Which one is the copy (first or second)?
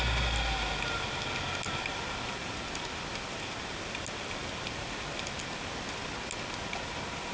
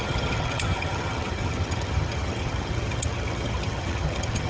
second